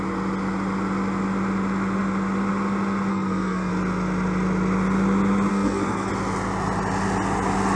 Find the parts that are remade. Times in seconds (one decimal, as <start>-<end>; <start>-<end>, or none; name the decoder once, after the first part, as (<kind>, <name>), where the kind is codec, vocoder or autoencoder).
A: 3.1-3.7 (codec, SNAC); 5.5-6.1